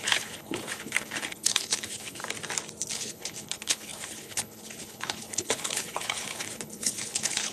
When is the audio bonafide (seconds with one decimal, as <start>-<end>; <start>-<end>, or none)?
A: 2.2-2.9